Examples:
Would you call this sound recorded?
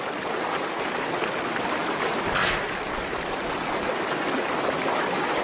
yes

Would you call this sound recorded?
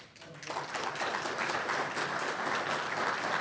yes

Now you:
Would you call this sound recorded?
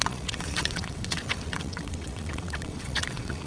no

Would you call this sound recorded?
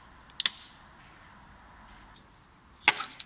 yes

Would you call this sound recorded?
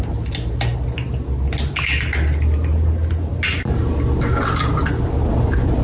yes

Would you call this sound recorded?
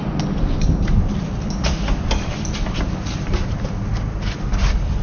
yes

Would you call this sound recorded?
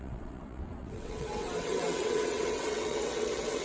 no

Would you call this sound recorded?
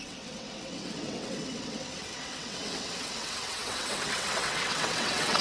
no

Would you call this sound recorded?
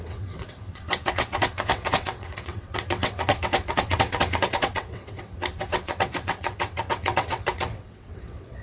no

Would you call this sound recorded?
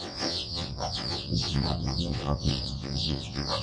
no